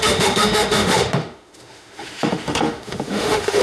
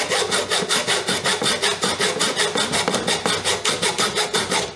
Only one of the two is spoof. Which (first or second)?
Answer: first